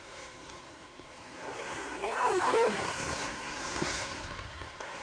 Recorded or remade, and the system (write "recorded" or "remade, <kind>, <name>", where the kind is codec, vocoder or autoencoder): remade, codec, SNAC